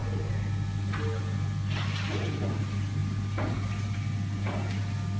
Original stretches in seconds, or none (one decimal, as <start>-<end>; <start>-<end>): 0.0-5.2